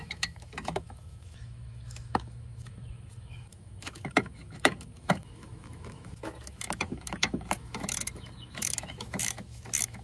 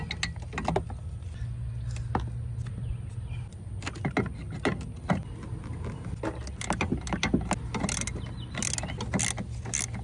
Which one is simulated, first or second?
first